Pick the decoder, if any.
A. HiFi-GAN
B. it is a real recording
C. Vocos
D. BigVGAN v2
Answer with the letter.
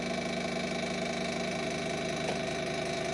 B